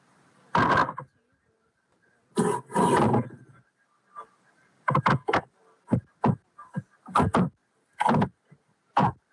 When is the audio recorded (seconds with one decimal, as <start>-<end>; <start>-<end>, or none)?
0.8-5.8